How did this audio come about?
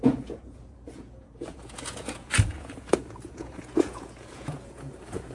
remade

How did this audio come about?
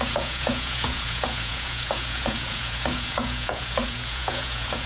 remade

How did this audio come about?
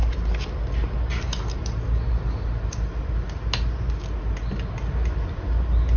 recorded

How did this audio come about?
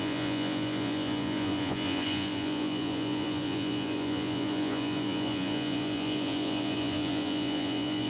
remade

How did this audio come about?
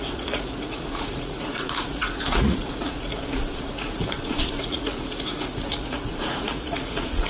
remade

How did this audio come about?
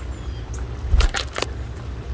recorded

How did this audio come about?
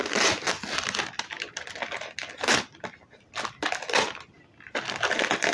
recorded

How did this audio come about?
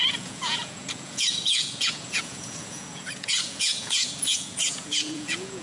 remade